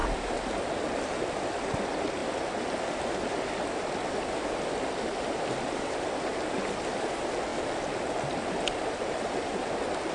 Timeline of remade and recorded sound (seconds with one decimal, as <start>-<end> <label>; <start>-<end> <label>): 0.0-0.6 remade; 0.6-10.1 recorded